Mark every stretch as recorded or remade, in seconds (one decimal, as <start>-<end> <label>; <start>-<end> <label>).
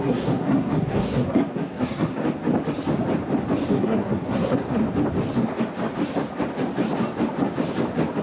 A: 0.0-2.2 remade; 2.2-3.7 recorded; 3.7-4.8 remade; 4.8-8.2 recorded